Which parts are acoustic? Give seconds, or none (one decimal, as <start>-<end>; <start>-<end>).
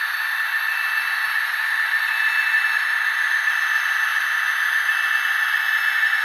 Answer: 0.0-6.2